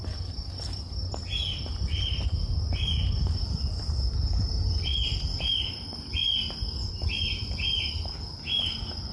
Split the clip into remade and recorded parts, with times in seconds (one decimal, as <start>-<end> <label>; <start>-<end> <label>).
0.0-9.1 recorded